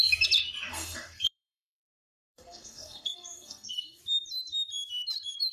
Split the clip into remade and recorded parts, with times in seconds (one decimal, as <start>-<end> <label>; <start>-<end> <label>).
0.0-0.7 recorded; 0.7-4.0 remade; 4.0-5.5 recorded